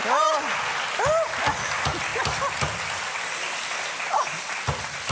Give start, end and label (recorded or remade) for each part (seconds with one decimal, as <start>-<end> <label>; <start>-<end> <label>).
0.0-5.1 recorded